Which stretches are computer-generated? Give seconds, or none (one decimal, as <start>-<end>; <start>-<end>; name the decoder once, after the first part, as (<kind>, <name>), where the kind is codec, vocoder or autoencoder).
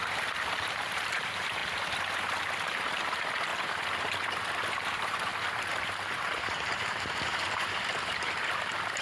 0.0-1.6 (vocoder, BigVGAN v2); 2.9-3.5; 4.7-5.3; 5.8-9.0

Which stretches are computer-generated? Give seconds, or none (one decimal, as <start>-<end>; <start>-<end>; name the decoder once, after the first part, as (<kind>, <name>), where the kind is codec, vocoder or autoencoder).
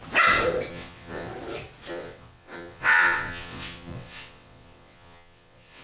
0.7-1.3 (vocoder, WaveNeXt); 1.9-5.8